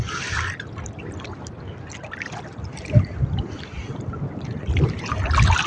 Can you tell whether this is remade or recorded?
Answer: recorded